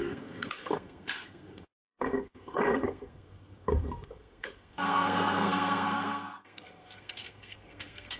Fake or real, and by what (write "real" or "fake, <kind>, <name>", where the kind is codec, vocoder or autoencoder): fake, codec, SNAC